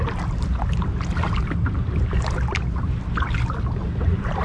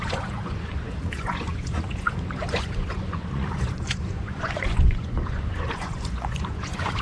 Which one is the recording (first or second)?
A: first